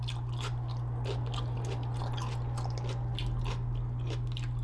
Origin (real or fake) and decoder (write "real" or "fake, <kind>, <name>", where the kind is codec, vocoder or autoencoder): real